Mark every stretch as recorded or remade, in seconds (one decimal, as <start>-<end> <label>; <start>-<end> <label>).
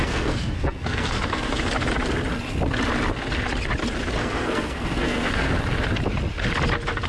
0.0-1.7 remade; 1.7-4.2 recorded; 4.2-5.5 remade; 5.5-7.1 recorded